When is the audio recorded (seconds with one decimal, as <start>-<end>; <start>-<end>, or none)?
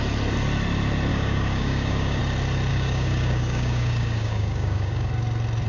0.0-1.1; 2.2-2.7; 5.1-5.7